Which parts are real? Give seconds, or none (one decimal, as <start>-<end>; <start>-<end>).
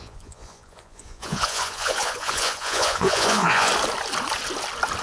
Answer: 3.7-5.0